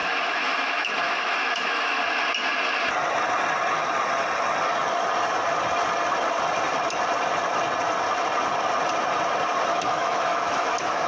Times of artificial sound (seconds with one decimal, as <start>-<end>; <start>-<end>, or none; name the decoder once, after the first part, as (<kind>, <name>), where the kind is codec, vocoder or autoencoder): 0.0-2.0 (autoencoder, DAC-VAE); 9.7-11.1